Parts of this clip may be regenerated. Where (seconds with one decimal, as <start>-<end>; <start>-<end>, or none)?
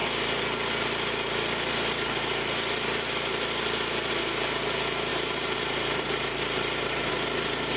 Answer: 5.1-7.1